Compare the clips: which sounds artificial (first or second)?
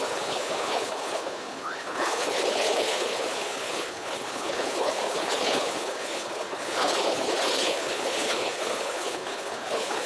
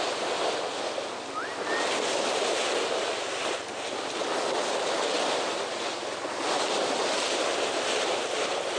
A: first